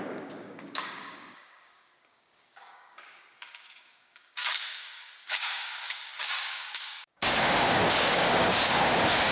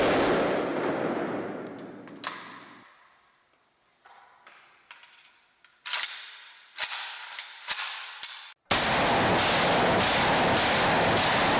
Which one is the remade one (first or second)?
first